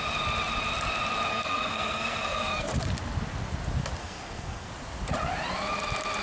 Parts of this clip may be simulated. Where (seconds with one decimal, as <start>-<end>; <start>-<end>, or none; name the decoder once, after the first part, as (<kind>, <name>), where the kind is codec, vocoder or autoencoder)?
1.3-2.7 (codec, SNAC); 4.0-4.7